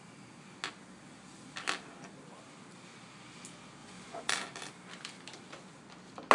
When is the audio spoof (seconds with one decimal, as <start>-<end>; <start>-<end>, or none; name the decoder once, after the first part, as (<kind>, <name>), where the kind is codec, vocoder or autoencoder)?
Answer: 3.8-4.3 (vocoder, Vocos)